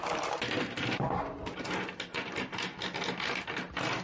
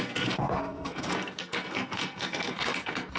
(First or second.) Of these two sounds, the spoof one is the second